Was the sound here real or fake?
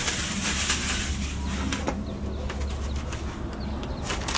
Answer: real